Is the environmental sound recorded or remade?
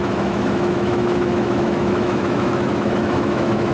remade